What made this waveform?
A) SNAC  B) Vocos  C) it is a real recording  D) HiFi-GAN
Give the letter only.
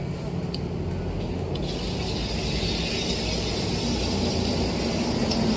C